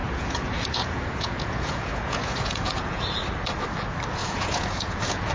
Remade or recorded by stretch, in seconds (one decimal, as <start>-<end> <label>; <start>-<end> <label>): 0.0-3.2 remade; 3.2-4.2 recorded; 4.2-5.3 remade

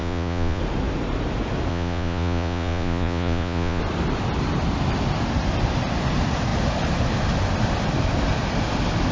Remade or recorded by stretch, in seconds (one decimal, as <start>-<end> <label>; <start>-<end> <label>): 0.0-0.6 remade; 0.6-1.7 recorded; 1.7-3.8 remade; 3.8-9.1 recorded

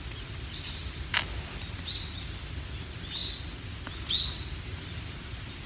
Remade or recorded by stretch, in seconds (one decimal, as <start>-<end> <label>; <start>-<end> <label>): 0.0-5.7 recorded